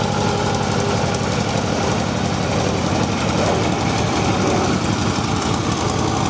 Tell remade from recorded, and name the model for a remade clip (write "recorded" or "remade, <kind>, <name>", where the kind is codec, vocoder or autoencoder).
recorded